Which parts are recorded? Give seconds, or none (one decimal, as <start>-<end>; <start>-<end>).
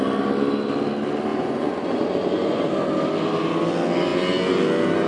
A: 0.0-1.3; 2.7-5.1